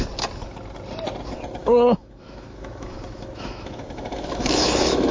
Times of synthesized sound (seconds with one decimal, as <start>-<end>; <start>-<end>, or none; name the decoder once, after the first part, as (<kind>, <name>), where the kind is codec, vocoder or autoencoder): 1.6-5.1 (autoencoder, DAC-VAE)